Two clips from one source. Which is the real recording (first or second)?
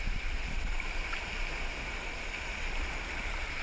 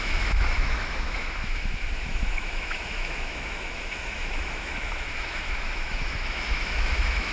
first